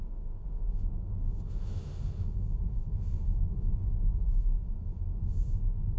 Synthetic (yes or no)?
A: yes